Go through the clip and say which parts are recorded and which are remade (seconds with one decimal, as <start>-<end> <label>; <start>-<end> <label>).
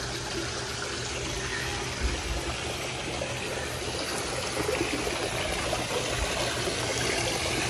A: 0.0-1.7 recorded; 1.7-5.6 remade; 5.6-6.9 recorded; 6.9-7.7 remade